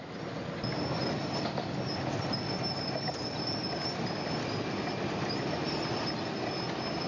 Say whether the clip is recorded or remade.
recorded